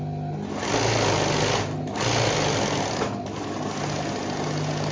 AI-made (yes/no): no